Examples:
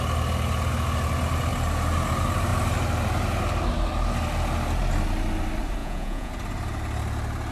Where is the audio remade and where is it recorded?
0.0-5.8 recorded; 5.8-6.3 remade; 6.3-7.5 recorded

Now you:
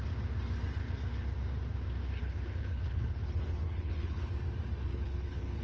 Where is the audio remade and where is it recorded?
0.0-2.2 recorded; 2.2-4.3 remade; 4.3-4.9 recorded; 4.9-5.6 remade

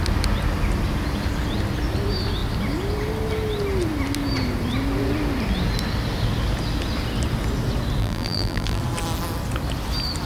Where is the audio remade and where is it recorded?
0.0-8.0 recorded; 8.0-8.8 remade; 8.8-10.3 recorded

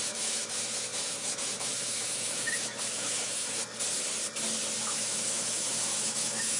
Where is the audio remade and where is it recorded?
0.0-3.6 remade; 3.6-4.8 recorded; 4.8-6.6 remade

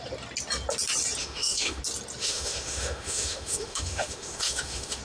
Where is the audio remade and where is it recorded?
0.0-1.2 recorded; 1.2-1.8 remade; 1.8-2.2 recorded; 2.2-5.0 remade

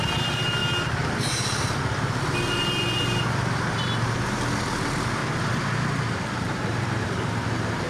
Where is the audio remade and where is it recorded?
0.0-0.6 remade; 0.6-1.8 recorded; 1.8-5.2 remade; 5.2-6.2 recorded; 6.2-7.9 remade